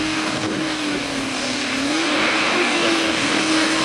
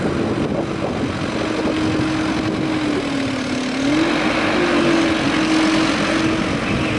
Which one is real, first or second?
second